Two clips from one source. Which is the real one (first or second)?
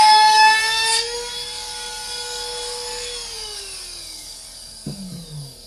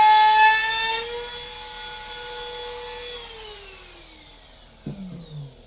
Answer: second